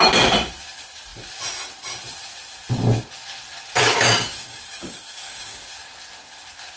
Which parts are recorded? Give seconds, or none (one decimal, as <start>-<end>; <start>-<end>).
0.0-3.8; 5.7-6.8